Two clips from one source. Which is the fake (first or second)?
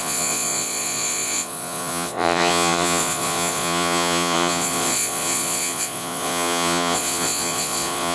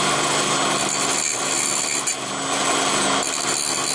first